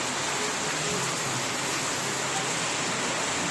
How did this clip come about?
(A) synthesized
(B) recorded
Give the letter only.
B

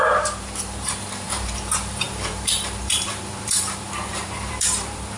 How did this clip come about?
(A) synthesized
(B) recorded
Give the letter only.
A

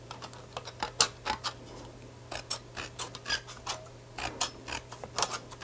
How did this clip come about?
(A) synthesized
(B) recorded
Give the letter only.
B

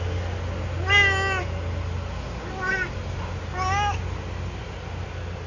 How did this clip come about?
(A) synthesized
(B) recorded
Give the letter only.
B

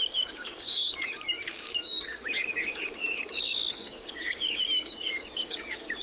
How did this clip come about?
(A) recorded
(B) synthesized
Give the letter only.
B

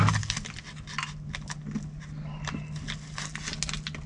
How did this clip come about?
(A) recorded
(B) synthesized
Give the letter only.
A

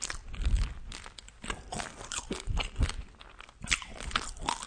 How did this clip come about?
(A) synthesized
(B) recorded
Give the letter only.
B